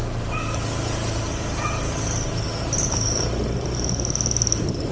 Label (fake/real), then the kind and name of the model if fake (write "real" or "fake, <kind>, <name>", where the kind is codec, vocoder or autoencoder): real